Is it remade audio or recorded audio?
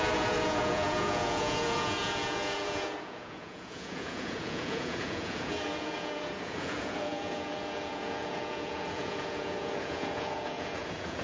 remade